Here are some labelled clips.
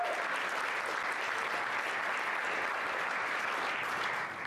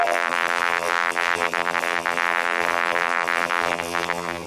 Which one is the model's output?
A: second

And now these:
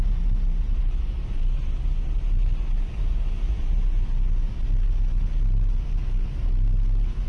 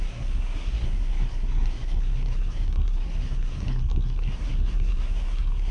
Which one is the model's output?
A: second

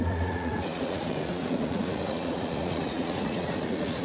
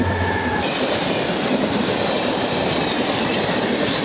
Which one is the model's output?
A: first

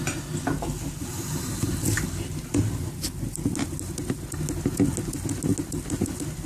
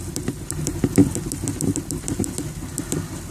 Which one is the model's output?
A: second